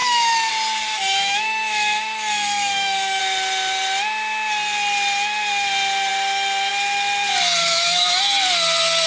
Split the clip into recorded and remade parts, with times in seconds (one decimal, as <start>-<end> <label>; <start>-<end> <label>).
0.0-0.5 remade; 0.5-0.9 recorded; 0.9-3.2 remade; 3.2-7.6 recorded; 7.6-8.2 remade; 8.2-9.1 recorded